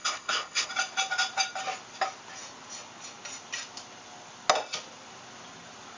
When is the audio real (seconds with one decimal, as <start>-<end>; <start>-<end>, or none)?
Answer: 0.7-6.0